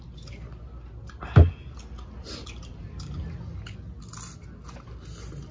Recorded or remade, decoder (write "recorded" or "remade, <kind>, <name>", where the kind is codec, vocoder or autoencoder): recorded